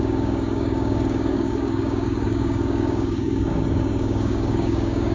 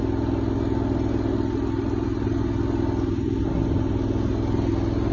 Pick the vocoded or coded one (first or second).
first